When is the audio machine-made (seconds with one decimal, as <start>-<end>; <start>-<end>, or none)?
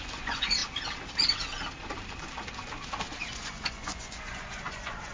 0.0-0.6; 3.3-5.1